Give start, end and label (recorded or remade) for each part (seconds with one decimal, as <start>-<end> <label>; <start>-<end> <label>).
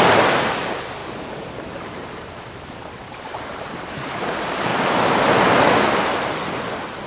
0.0-1.0 recorded; 1.0-4.3 remade; 4.3-7.1 recorded